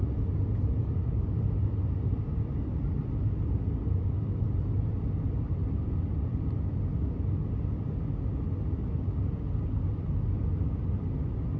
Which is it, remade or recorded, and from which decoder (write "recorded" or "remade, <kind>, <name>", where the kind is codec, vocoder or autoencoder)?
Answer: recorded